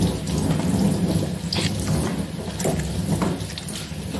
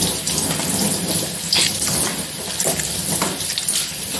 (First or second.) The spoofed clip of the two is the second